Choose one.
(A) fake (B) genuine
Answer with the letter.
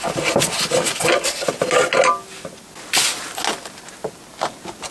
B